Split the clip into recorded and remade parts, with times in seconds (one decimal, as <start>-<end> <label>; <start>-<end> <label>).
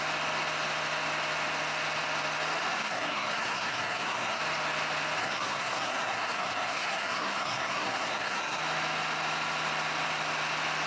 0.0-2.8 recorded; 2.8-4.4 remade; 4.4-5.2 recorded; 5.2-8.6 remade; 8.6-10.9 recorded